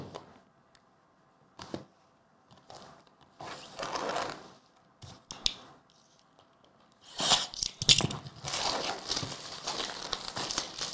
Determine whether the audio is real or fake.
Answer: real